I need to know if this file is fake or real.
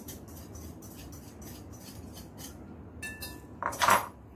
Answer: real